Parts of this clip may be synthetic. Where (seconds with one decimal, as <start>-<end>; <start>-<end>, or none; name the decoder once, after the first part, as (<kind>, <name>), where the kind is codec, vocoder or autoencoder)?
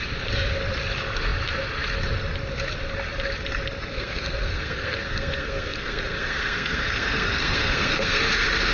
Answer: 3.9-8.2 (codec, SNAC)